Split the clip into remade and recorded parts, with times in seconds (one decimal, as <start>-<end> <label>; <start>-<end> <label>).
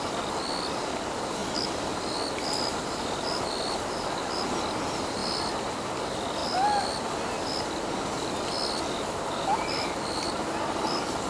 0.0-11.3 recorded